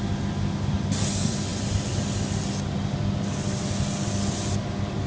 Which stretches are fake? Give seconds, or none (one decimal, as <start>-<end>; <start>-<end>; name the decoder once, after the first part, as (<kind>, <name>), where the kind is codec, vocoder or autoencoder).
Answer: none